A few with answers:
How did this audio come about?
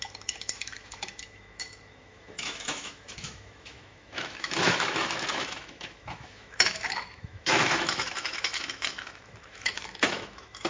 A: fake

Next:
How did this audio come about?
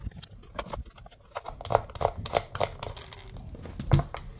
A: real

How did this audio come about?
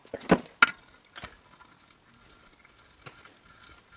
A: real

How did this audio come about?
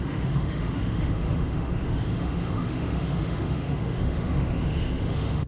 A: fake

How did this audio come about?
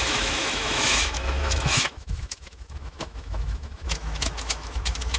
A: fake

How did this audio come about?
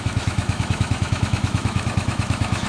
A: fake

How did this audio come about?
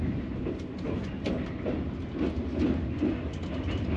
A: real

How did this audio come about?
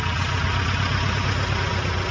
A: real